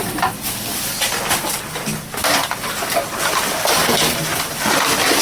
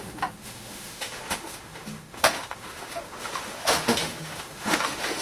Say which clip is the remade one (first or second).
second